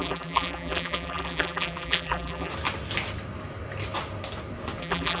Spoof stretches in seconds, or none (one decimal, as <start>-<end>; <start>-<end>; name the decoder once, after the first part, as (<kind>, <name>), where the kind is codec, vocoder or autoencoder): 0.0-2.5 (vocoder, BigVGAN v2); 4.8-5.2

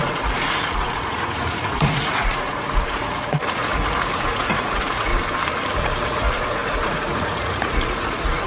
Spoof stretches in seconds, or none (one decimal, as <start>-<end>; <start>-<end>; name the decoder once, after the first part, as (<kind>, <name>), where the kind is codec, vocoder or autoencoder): 0.0-5.1 (vocoder, Vocos); 5.8-8.5

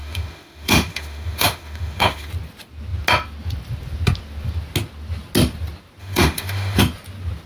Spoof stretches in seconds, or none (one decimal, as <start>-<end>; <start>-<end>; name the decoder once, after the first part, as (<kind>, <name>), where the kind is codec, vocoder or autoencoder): 0.0-2.3 (autoencoder, DAC-VAE); 6.0-6.8

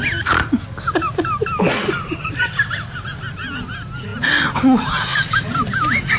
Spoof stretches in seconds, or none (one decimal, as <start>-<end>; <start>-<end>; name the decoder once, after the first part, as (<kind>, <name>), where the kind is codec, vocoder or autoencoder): none

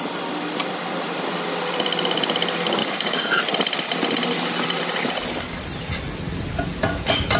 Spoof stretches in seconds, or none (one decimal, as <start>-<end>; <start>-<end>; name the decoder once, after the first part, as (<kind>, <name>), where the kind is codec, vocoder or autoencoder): 2.8-3.4 (codec, DAC)

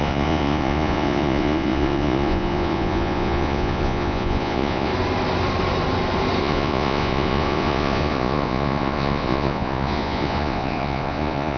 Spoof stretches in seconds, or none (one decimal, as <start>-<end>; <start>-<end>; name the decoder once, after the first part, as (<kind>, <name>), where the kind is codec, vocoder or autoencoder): 0.0-4.9 (vocoder, Vocos); 6.4-11.6

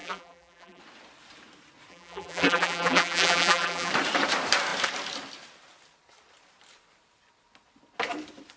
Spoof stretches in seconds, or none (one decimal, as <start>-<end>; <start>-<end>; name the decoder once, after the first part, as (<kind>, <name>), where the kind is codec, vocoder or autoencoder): 0.0-0.8 (vocoder, BigVGAN v2); 1.9-3.9